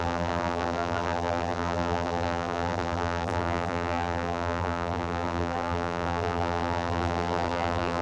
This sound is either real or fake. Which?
fake